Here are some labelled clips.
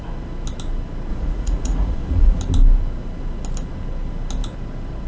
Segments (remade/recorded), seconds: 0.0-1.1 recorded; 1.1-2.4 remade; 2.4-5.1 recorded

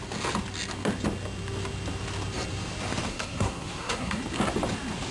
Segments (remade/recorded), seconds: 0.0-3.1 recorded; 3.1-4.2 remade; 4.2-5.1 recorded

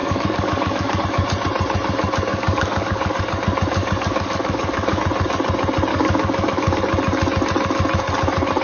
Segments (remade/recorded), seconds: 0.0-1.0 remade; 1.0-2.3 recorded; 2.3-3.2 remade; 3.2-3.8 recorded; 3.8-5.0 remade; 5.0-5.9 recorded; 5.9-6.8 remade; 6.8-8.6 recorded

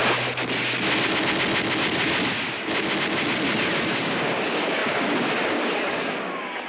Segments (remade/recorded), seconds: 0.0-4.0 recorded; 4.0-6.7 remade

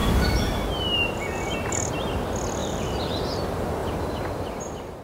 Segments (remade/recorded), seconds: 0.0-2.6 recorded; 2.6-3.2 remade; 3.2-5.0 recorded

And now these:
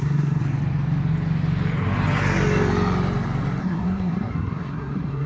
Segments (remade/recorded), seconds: 0.0-0.4 remade; 0.4-3.6 recorded; 3.6-5.3 remade

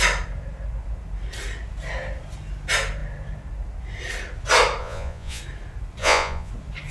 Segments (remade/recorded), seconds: 0.0-4.8 recorded; 4.8-5.4 remade; 5.4-6.0 recorded; 6.0-6.5 remade; 6.5-6.9 recorded

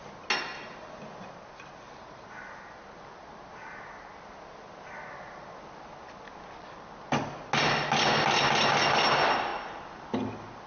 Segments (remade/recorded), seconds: 0.0-10.7 recorded